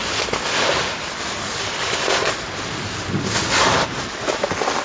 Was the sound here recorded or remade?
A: recorded